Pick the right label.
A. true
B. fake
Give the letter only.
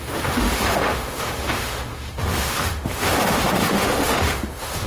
B